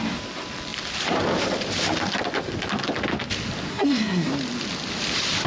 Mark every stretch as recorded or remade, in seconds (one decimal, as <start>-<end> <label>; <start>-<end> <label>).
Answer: 0.0-3.7 recorded; 3.7-4.3 remade; 4.3-5.5 recorded